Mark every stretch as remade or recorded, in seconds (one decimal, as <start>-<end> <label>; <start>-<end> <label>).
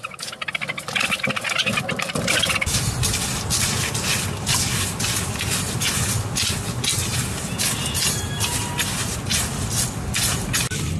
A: 0.0-11.0 recorded